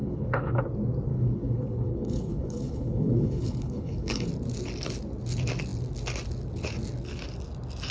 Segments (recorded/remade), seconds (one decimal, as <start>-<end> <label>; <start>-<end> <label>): 0.0-0.6 remade; 0.6-1.1 recorded; 1.1-4.3 remade; 4.3-7.9 recorded